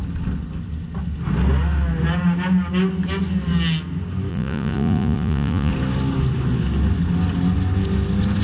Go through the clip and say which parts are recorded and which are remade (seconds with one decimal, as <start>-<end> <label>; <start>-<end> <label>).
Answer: 0.0-4.3 recorded; 4.3-5.7 remade; 5.7-8.4 recorded